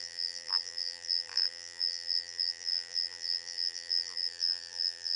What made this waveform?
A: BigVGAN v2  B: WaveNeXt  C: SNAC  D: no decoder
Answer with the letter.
A